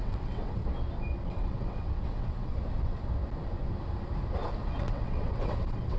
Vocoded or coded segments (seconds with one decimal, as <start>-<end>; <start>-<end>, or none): 0.0-0.6; 1.3-2.5; 4.8-6.0